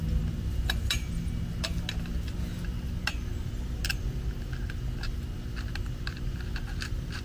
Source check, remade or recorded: recorded